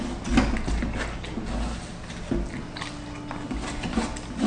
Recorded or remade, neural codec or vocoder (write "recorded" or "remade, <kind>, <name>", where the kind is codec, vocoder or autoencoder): recorded